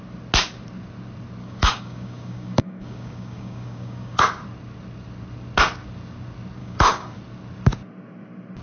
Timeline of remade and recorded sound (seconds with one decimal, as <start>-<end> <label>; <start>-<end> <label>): 0.0-1.4 recorded; 1.4-4.2 remade; 4.2-6.6 recorded; 6.6-7.2 remade; 7.2-8.6 recorded